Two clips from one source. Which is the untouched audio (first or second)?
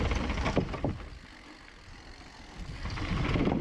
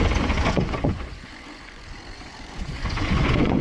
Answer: first